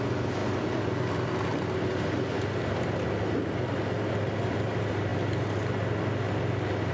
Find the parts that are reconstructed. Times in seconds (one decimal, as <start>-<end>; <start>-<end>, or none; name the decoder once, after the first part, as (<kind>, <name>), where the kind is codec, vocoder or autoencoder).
none